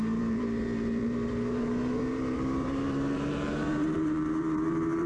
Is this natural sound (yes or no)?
no